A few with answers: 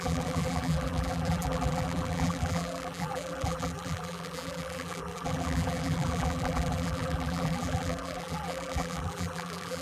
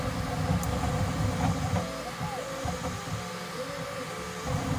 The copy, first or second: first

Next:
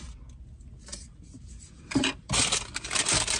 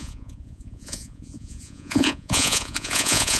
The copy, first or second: second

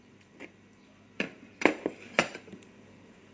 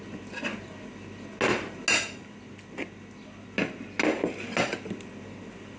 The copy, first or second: first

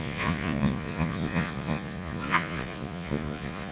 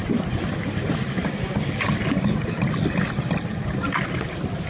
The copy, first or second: first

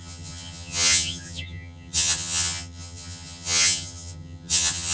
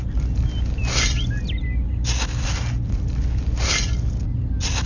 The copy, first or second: first